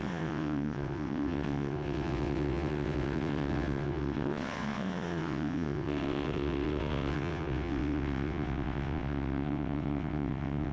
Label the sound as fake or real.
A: fake